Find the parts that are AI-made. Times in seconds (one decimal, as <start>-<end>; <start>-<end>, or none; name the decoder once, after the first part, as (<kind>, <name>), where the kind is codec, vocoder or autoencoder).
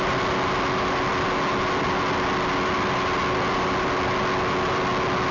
none